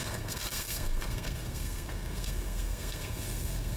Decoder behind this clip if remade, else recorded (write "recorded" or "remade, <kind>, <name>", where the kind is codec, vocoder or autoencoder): remade, codec, SNAC